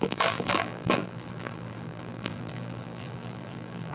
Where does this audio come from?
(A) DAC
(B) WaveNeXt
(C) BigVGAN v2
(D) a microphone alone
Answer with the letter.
C